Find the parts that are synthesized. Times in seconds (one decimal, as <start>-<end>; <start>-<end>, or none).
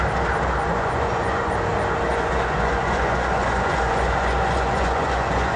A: 0.7-1.5; 2.1-5.6